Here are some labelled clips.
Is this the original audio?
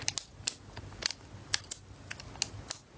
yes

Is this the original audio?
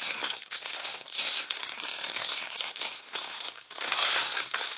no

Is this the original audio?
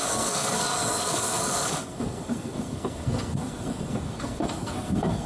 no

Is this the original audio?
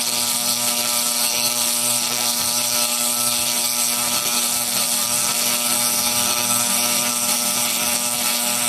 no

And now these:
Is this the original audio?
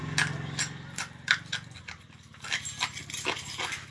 yes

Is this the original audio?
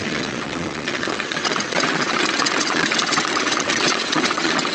no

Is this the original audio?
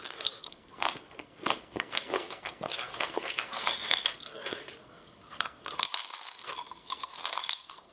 no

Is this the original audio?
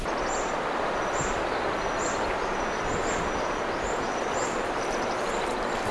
no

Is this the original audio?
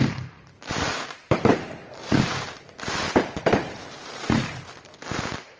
no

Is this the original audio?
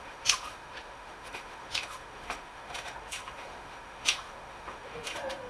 no